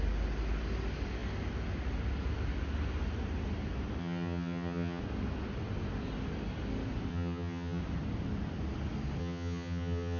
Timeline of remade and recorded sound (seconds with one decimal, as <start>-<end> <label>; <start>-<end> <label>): 0.0-4.0 recorded; 4.0-5.0 remade; 5.0-7.1 recorded; 7.1-7.8 remade; 7.8-9.2 recorded; 9.2-10.2 remade